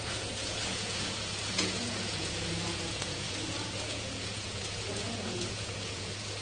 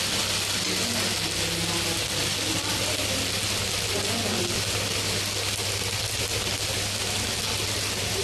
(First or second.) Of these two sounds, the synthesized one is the first